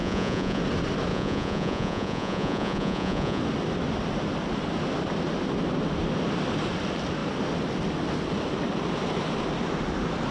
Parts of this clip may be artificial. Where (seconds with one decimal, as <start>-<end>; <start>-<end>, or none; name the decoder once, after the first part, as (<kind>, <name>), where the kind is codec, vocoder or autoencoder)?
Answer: 0.0-0.6 (vocoder, Vocos); 1.1-3.4